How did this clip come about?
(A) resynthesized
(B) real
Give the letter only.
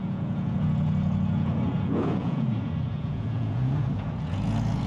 A